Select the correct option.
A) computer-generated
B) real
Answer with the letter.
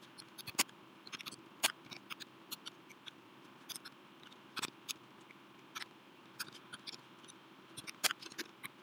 B